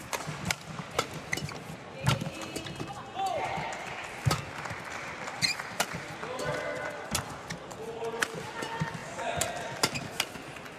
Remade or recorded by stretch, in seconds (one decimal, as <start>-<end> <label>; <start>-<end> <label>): 0.0-10.8 recorded